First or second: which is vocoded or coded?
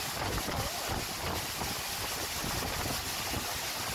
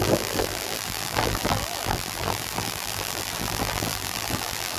second